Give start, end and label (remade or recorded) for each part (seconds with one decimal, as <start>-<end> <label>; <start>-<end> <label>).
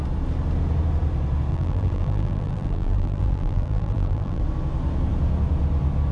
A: 0.0-1.5 recorded; 1.5-4.4 remade; 4.4-6.1 recorded